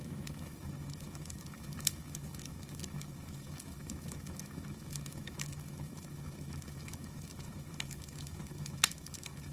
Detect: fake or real fake